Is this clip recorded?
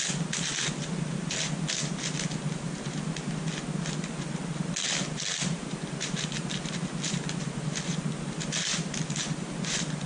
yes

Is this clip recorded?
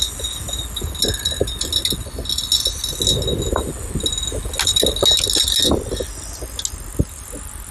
yes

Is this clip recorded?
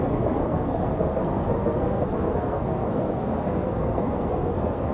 no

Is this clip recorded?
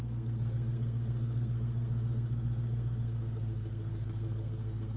no